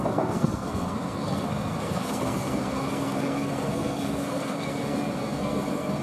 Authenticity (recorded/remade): remade